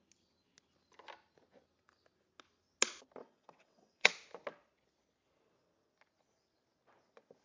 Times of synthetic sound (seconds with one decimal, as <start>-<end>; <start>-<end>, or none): 3.2-4.1